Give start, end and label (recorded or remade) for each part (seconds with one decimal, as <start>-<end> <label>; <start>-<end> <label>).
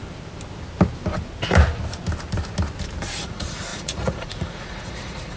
0.0-3.2 recorded; 3.2-5.4 remade